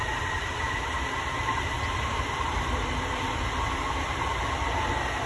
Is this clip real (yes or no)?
yes